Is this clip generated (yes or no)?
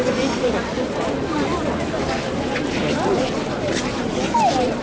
no